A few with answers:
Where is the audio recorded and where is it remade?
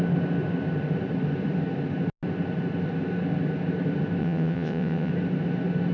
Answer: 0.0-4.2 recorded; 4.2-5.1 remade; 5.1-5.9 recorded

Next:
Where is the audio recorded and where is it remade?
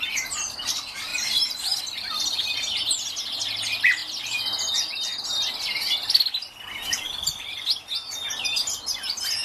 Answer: 0.0-1.1 recorded; 1.1-1.8 remade; 1.8-9.4 recorded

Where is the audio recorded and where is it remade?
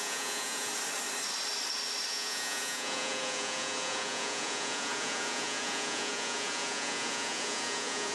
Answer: 0.0-0.7 remade; 0.7-2.1 recorded; 2.1-8.1 remade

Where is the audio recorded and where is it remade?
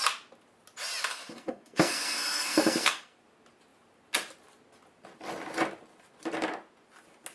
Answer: 0.0-1.1 recorded; 1.1-3.2 remade; 3.2-7.3 recorded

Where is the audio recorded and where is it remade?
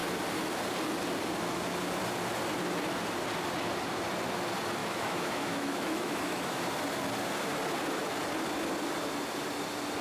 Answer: 0.0-4.8 recorded; 4.8-6.6 remade; 6.6-10.0 recorded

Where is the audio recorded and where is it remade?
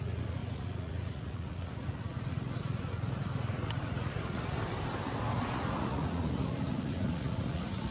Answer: 0.0-4.6 remade; 4.6-5.3 recorded; 5.3-7.9 remade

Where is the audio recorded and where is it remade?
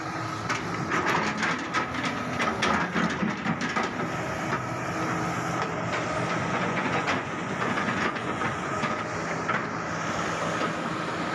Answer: 0.0-6.4 recorded; 6.4-9.0 remade; 9.0-11.3 recorded